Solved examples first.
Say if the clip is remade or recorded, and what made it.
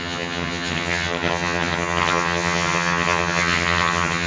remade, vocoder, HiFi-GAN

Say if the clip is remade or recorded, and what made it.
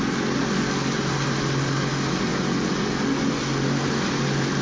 recorded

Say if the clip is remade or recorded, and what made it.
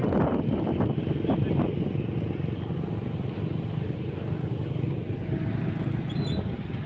recorded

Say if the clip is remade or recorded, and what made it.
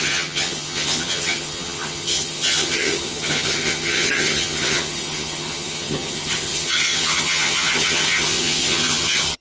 remade, vocoder, HiFi-GAN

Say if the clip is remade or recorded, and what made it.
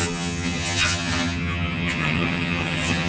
remade, vocoder, HiFi-GAN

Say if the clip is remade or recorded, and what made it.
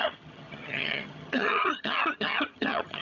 remade, vocoder, HiFi-GAN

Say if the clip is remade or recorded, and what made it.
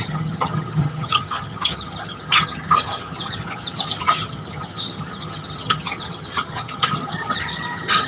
remade, vocoder, HiFi-GAN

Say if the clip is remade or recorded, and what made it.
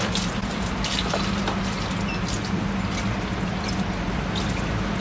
recorded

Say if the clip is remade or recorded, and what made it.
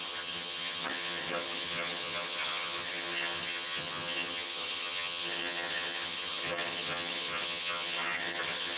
remade, vocoder, HiFi-GAN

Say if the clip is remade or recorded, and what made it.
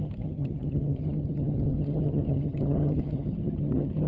remade, vocoder, HiFi-GAN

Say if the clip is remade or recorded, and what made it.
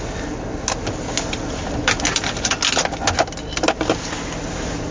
recorded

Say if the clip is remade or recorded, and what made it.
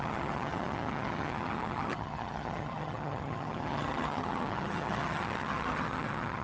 remade, vocoder, HiFi-GAN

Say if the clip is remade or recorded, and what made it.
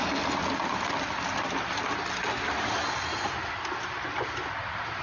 recorded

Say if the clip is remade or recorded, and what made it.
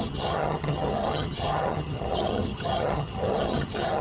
remade, vocoder, HiFi-GAN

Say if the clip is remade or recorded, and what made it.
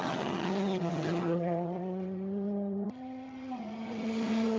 remade, vocoder, HiFi-GAN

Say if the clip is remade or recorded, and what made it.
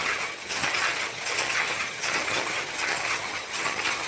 remade, vocoder, HiFi-GAN